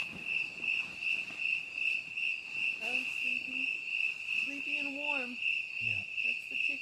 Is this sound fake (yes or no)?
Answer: no